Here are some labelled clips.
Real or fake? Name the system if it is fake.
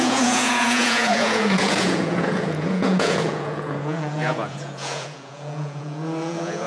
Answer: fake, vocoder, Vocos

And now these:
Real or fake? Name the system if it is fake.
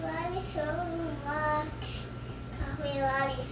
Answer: real